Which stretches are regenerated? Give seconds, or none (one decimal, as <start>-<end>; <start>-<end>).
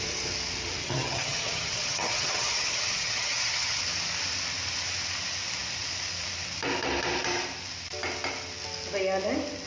0.8-3.8